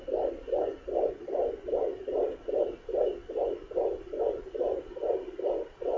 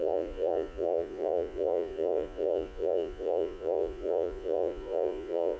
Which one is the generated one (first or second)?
second